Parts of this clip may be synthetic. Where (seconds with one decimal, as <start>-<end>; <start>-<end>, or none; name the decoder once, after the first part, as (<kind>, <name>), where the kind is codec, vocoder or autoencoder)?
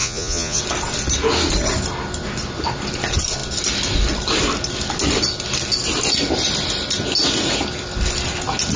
0.0-0.6 (vocoder, Vocos)